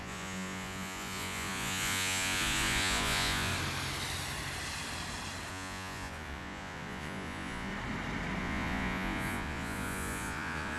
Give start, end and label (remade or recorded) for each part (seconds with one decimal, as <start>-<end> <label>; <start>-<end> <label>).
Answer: 0.0-3.5 remade; 3.5-5.5 recorded; 5.5-7.7 remade; 7.7-8.4 recorded; 8.4-10.8 remade